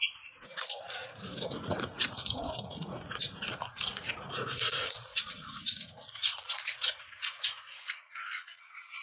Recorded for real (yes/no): no